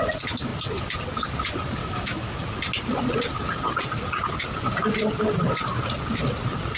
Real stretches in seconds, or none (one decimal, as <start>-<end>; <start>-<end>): 0.0-1.8; 2.4-6.8